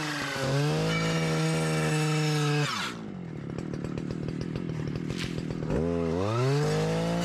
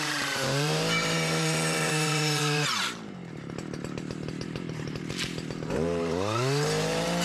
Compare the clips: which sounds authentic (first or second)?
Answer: first